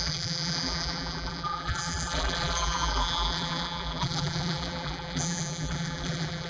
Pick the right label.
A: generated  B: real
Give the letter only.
A